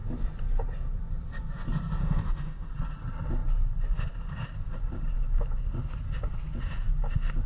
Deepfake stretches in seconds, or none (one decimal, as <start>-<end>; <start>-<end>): 2.0-2.7